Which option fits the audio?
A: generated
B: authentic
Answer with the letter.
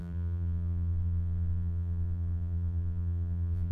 A